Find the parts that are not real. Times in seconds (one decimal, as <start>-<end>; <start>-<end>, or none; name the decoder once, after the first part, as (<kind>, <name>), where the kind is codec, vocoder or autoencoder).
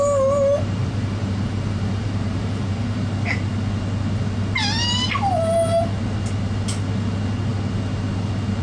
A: 0.8-3.0 (vocoder, BigVGAN v2)